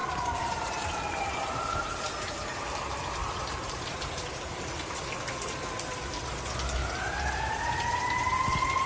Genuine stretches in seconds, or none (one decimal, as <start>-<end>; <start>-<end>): 2.1-3.2; 4.5-6.8; 8.2-8.9